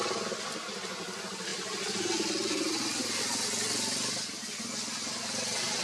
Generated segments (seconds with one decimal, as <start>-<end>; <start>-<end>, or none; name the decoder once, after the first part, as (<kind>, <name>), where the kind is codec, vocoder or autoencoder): none